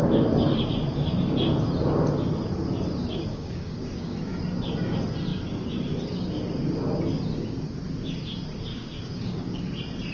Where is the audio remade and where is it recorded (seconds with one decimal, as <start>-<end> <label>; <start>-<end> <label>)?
0.0-3.3 recorded; 3.3-4.4 remade; 4.4-8.7 recorded; 8.7-9.6 remade; 9.6-10.1 recorded